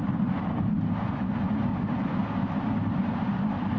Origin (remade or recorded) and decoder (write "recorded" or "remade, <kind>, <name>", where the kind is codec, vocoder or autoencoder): recorded